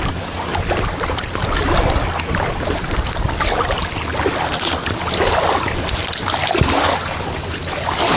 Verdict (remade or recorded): recorded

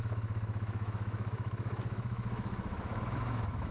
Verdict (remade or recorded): remade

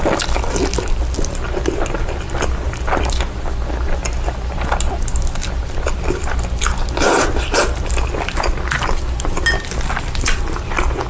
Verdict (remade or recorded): recorded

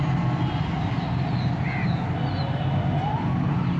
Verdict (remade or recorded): recorded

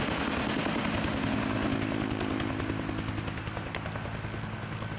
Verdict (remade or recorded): recorded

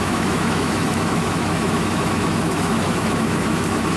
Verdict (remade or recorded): remade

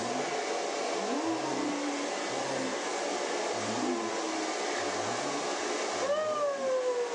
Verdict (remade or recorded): recorded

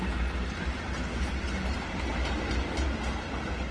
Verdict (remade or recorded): recorded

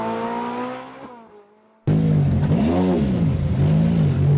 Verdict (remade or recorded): recorded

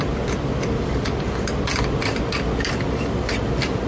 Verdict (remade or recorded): recorded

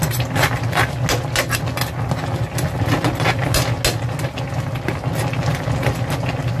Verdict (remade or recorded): recorded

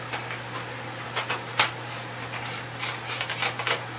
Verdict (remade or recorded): recorded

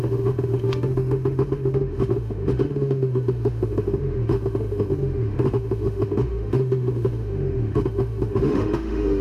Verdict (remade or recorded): remade